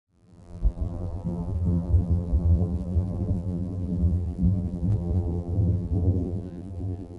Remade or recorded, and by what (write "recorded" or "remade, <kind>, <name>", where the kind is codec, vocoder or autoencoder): remade, vocoder, BigVGAN v2